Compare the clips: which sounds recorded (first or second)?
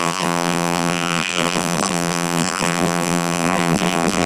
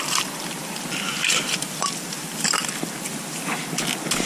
second